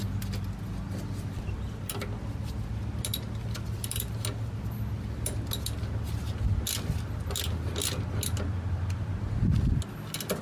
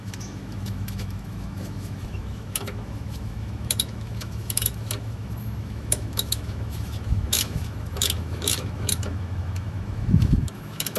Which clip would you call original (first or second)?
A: first